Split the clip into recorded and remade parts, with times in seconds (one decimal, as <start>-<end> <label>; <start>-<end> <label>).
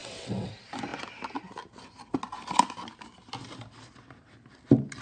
0.0-0.5 remade; 0.5-5.0 recorded